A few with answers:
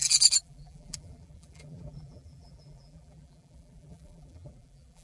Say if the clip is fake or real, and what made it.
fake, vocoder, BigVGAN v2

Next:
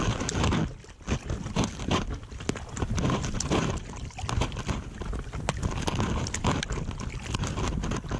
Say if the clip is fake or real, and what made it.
real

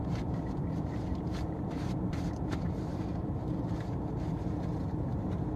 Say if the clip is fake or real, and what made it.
fake, vocoder, BigVGAN v2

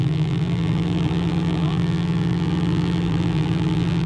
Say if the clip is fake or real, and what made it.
fake, vocoder, BigVGAN v2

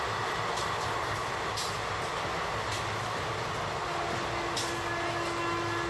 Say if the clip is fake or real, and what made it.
real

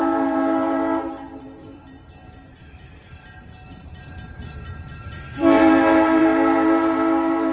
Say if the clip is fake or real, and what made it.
fake, vocoder, BigVGAN v2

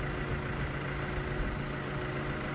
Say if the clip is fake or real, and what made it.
real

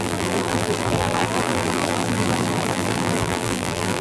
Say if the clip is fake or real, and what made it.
fake, vocoder, BigVGAN v2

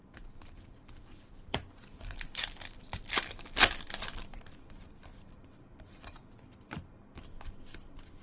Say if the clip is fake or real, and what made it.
fake, vocoder, BigVGAN v2